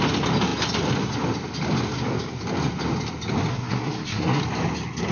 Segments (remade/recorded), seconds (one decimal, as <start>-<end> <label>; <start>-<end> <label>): 0.0-3.5 recorded; 3.5-4.4 remade; 4.4-5.1 recorded